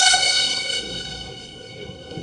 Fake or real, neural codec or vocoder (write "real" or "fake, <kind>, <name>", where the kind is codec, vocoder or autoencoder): fake, codec, SNAC